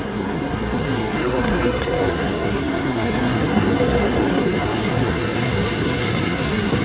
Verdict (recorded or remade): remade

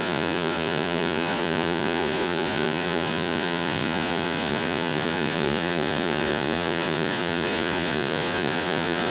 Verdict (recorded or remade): remade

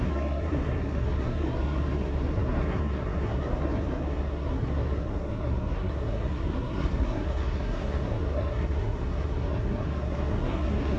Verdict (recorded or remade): remade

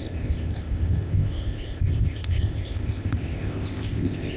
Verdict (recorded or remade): remade